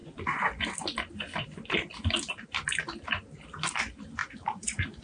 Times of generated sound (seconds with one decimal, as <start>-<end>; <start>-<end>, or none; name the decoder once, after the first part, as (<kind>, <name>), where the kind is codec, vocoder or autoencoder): 4.2-5.0 (vocoder, BigVGAN v2)